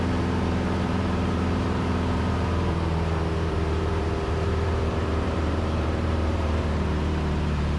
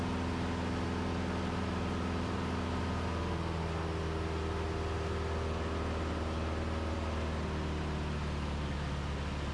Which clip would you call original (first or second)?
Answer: second